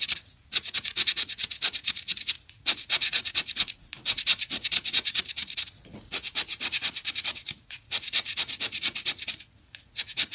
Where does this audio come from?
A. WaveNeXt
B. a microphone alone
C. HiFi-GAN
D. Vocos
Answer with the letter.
D